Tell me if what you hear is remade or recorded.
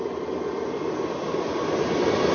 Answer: recorded